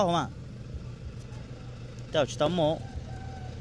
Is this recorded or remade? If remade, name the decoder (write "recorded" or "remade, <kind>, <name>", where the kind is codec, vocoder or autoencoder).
recorded